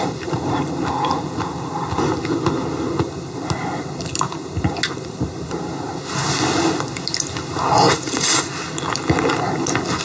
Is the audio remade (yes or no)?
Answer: no